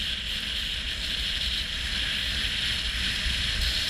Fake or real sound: real